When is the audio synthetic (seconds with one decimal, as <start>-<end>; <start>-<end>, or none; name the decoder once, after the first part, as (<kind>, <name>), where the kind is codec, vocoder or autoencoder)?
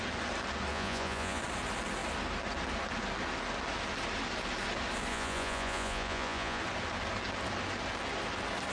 0.7-1.4 (vocoder, Vocos); 5.1-6.6